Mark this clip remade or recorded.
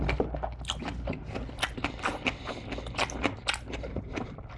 recorded